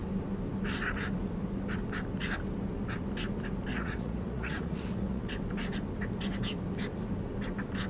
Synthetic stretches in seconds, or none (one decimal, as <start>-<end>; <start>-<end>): 3.7-5.2